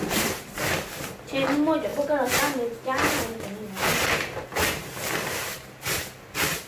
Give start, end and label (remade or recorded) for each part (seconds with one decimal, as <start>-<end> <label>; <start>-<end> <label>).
0.0-3.9 recorded; 3.9-5.4 remade; 5.4-6.7 recorded